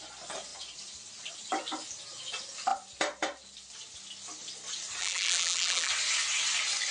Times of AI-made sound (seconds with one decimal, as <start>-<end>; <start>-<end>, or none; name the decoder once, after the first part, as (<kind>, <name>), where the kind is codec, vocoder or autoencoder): 5.0-5.9 (vocoder, BigVGAN v2)